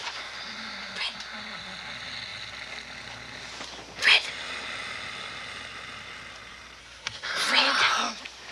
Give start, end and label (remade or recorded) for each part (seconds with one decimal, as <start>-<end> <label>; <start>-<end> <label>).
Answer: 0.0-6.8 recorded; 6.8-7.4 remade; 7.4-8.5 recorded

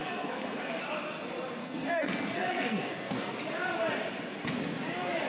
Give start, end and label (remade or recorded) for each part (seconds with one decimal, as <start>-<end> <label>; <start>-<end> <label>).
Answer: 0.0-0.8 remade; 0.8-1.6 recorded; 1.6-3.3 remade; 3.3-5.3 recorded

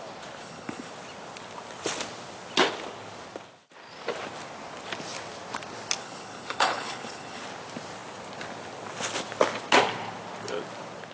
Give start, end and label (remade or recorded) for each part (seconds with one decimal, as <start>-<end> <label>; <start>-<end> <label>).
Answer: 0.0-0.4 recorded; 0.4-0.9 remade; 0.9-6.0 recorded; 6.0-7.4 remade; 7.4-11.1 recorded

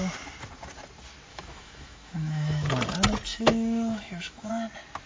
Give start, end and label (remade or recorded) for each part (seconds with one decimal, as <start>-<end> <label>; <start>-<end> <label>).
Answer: 0.0-1.3 recorded; 1.3-2.7 remade; 2.7-3.3 recorded; 3.3-4.5 remade; 4.5-5.1 recorded

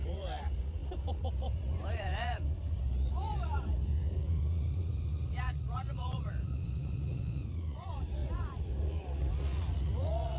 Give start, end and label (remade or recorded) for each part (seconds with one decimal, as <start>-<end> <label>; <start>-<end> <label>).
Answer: 0.0-10.4 remade

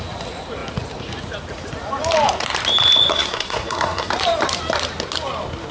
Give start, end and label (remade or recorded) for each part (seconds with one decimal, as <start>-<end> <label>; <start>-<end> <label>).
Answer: 0.0-3.1 recorded; 3.1-4.1 remade; 4.1-5.7 recorded